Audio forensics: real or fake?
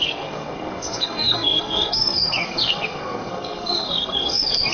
fake